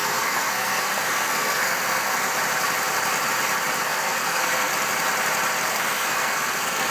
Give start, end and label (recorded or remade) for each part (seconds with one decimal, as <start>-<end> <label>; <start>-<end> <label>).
0.0-2.3 remade; 2.3-3.8 recorded; 3.8-4.7 remade; 4.7-5.7 recorded; 5.7-6.9 remade